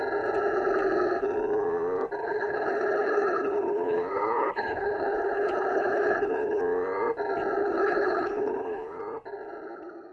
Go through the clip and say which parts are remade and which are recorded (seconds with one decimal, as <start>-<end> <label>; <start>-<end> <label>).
0.0-2.2 recorded; 2.2-6.6 remade; 6.6-7.6 recorded; 7.6-9.0 remade; 9.0-10.1 recorded